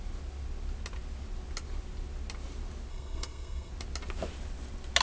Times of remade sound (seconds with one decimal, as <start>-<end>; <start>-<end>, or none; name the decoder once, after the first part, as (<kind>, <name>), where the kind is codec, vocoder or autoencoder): 2.9-3.7 (codec, SNAC)